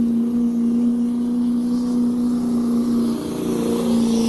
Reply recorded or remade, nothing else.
recorded